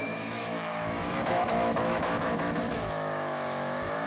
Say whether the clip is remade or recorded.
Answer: remade